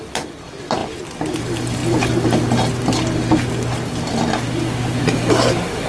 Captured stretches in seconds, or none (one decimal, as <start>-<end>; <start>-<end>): 0.0-0.8; 1.4-5.9